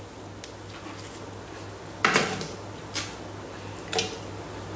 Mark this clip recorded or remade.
recorded